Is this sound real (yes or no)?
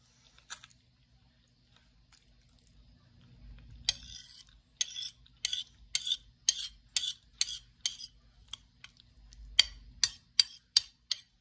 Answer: yes